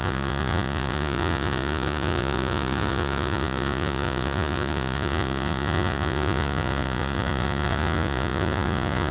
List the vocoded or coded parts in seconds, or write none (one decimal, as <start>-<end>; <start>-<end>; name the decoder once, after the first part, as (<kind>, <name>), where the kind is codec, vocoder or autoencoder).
0.0-9.1 (vocoder, Vocos)